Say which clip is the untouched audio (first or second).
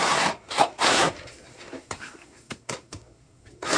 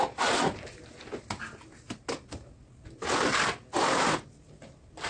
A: second